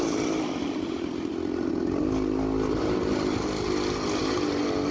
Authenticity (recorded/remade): recorded